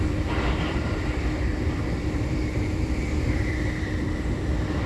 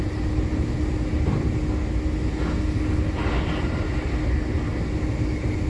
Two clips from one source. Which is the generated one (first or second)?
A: first